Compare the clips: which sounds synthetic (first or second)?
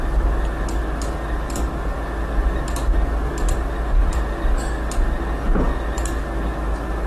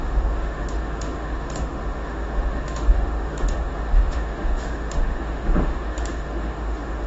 second